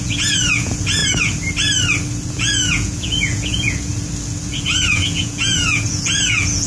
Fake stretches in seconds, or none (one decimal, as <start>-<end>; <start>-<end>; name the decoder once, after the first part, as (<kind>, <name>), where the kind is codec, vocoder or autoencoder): 0.0-1.0 (vocoder, Vocos); 2.3-3.9; 4.5-6.7